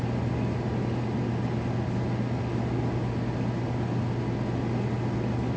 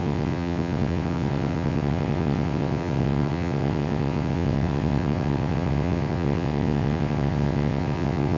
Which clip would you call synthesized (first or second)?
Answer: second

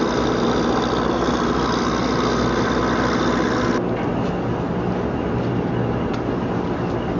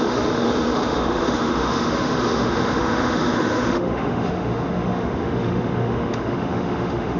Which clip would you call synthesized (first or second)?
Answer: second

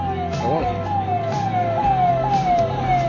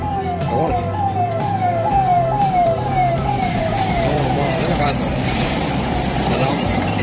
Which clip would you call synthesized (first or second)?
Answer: second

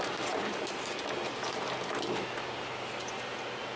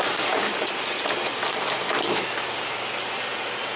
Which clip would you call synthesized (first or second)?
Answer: second